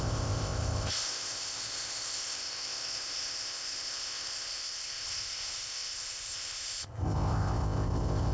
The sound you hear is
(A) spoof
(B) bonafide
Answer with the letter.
A